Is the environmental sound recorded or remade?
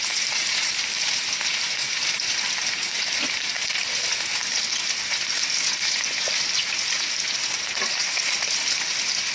recorded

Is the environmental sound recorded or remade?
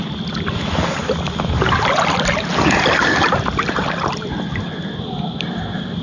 recorded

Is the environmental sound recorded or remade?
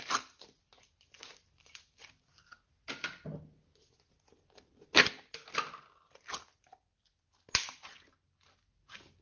recorded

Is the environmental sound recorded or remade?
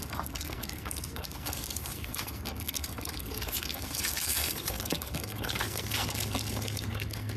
remade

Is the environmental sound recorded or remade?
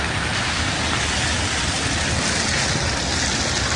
recorded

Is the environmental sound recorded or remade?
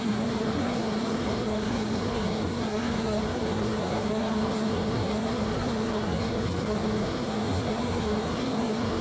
remade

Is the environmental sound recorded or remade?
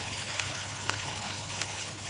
remade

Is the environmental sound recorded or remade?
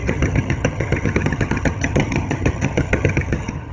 remade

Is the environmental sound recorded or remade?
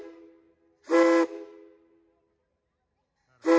recorded